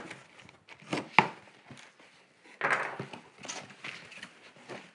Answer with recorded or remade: recorded